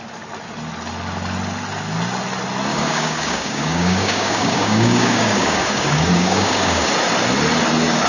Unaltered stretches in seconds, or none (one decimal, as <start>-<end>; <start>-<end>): 0.0-2.7; 6.9-8.1